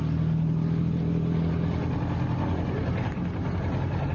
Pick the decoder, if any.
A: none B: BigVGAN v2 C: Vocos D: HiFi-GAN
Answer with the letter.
A